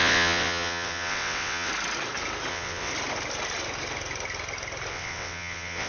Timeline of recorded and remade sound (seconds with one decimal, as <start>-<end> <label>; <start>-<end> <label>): 0.0-1.7 remade; 1.7-2.5 recorded; 2.5-2.9 remade; 2.9-4.9 recorded; 4.9-5.9 remade

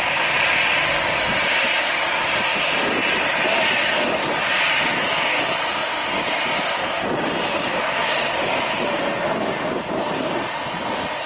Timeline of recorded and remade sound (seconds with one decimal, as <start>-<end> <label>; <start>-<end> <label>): 0.0-11.3 recorded